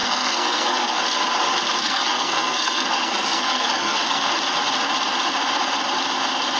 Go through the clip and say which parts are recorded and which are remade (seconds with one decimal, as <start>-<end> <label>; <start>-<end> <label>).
0.0-1.0 remade; 1.0-1.8 recorded; 1.8-4.3 remade; 4.3-6.6 recorded